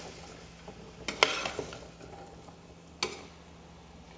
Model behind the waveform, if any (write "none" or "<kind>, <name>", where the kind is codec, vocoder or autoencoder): none